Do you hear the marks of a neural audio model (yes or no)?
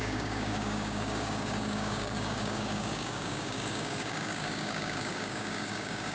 yes